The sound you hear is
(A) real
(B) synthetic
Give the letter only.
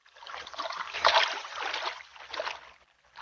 A